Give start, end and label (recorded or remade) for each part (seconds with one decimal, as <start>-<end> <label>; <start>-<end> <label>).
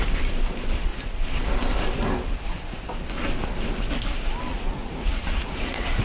0.0-4.5 recorded; 4.5-6.0 remade